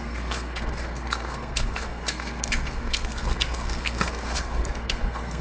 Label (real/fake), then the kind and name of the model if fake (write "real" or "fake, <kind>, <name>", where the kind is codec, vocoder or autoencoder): fake, codec, SNAC